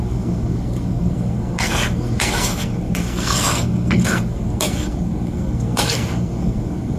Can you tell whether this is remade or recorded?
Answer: remade